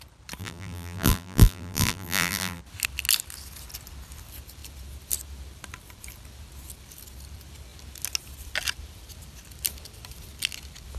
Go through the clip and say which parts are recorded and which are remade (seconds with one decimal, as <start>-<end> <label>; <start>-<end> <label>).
0.0-0.4 recorded; 0.4-2.6 remade; 2.6-11.0 recorded